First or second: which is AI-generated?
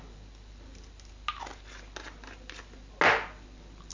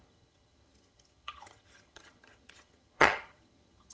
second